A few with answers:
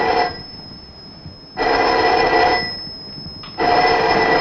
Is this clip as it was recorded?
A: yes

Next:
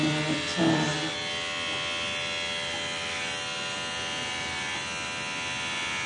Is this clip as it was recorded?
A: yes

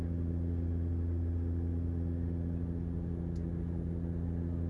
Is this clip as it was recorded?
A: yes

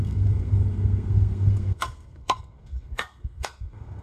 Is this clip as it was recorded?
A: no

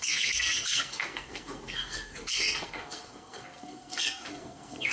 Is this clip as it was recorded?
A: no